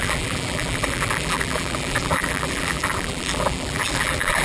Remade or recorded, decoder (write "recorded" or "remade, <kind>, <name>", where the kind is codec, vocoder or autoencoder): remade, vocoder, BigVGAN v2